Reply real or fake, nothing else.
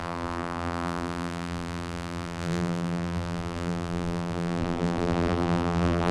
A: fake